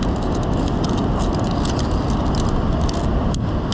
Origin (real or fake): real